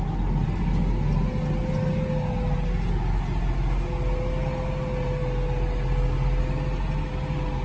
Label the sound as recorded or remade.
recorded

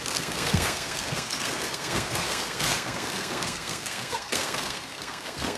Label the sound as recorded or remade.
remade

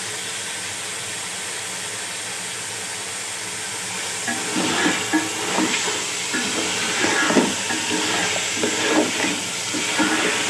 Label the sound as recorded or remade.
recorded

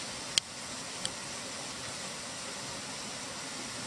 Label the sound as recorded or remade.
recorded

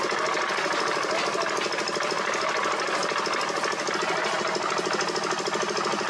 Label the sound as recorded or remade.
recorded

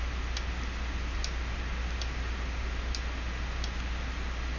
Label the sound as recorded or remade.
recorded